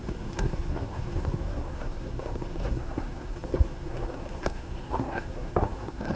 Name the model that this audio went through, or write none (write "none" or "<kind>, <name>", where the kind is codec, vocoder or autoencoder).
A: codec, SNAC